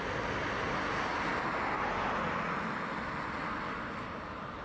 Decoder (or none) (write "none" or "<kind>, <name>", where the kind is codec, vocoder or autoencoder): none